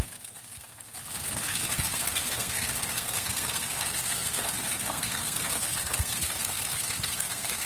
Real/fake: fake